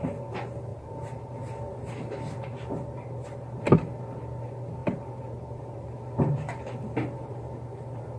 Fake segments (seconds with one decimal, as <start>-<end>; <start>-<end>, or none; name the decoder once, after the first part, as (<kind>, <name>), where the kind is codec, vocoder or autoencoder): 0.7-2.1 (vocoder, BigVGAN v2); 4.8-5.6